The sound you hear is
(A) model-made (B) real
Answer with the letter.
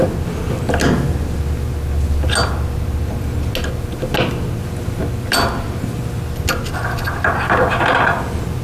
B